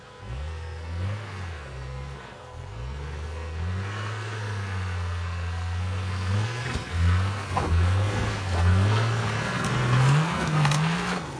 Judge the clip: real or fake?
fake